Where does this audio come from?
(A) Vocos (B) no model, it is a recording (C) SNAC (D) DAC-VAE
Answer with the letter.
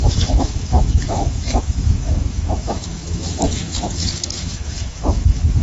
D